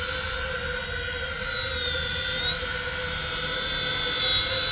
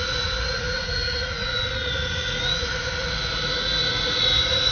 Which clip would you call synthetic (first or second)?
second